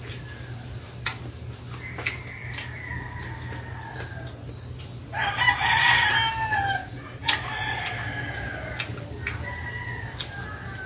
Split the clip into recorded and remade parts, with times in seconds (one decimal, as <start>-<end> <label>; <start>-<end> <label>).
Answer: 0.0-10.9 recorded